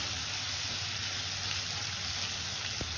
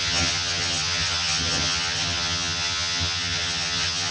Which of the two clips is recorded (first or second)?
first